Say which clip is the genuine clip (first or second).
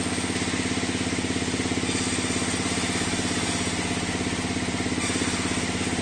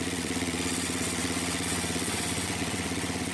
first